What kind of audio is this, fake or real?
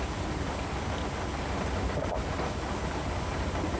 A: real